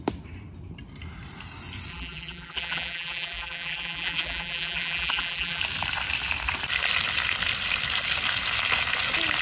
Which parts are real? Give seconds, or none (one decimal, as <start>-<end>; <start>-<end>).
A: 0.0-1.9; 5.6-9.4